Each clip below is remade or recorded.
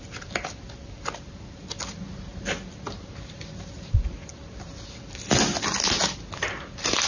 recorded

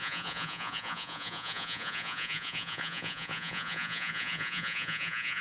remade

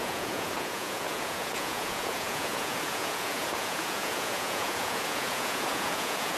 remade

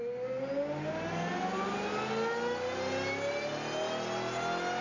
recorded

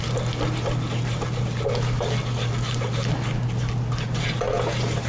recorded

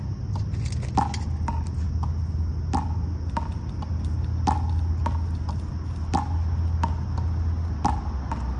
recorded